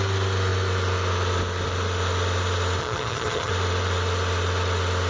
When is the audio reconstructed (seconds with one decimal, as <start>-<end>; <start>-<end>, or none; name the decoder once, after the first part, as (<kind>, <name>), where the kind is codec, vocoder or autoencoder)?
2.8-3.5 (vocoder, HiFi-GAN)